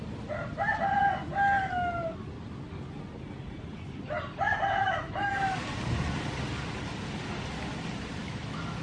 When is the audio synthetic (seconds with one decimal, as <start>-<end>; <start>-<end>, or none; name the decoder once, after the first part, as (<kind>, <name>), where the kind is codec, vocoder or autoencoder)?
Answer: 4.8-5.5 (autoencoder, DAC-VAE); 8.2-8.8